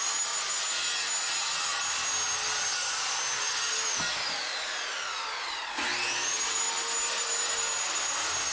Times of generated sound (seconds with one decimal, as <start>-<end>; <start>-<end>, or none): none